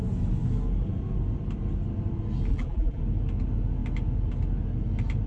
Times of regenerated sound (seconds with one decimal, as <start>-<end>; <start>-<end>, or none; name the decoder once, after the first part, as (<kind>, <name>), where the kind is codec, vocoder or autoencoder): 2.5-3.0 (vocoder, BigVGAN v2)